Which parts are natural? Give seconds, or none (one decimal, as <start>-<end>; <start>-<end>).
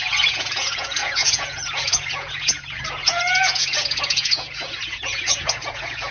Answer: none